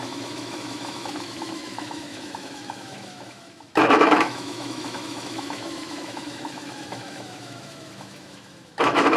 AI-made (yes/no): yes